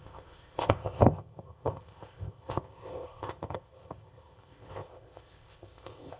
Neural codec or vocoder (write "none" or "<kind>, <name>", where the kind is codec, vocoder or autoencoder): codec, ZipCodec